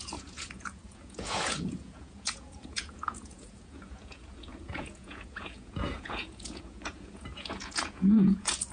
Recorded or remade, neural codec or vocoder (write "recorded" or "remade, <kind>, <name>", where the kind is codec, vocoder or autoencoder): remade, vocoder, Vocos